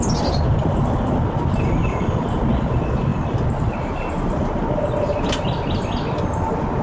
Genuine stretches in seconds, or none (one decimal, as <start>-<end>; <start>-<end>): 0.0-6.8